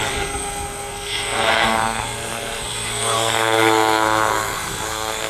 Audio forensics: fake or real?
fake